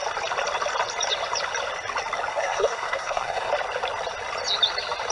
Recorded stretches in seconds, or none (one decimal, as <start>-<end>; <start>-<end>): 0.0-2.3; 3.5-5.1